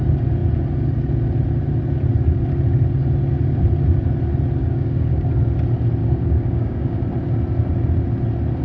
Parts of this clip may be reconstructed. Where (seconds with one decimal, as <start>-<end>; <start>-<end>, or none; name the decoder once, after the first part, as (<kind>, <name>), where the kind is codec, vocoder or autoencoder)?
4.6-5.3 (codec, DAC); 6.0-7.0